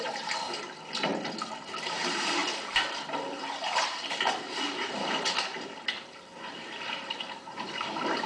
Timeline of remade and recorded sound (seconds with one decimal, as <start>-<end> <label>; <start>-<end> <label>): 0.0-8.3 remade